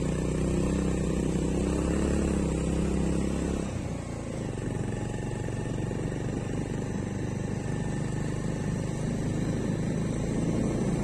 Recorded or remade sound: recorded